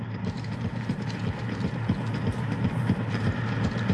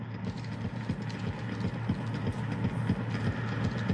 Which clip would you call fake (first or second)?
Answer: first